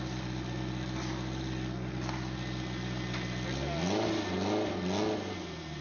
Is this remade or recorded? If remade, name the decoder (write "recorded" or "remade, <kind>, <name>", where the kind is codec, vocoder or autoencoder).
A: recorded